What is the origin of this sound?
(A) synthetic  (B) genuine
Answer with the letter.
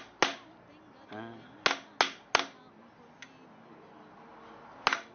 B